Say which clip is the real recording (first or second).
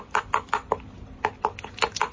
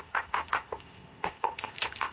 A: first